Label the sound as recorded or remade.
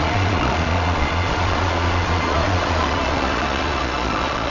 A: remade